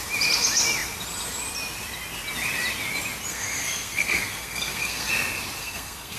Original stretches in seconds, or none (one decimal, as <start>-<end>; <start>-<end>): 0.0-3.3; 5.1-5.6